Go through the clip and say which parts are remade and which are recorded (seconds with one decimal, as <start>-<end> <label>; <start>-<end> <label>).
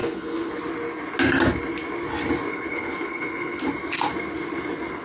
0.0-0.6 remade; 0.6-2.5 recorded; 2.5-3.6 remade; 3.6-5.0 recorded